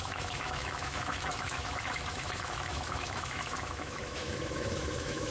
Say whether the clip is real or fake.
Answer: fake